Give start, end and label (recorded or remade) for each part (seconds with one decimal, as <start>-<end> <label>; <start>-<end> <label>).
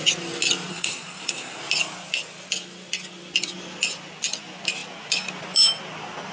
0.0-0.7 recorded; 0.7-1.6 remade; 1.6-6.3 recorded